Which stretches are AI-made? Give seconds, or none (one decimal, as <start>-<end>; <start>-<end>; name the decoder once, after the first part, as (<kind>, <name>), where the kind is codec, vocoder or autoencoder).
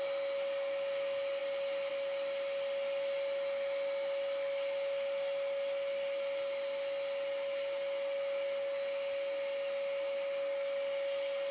none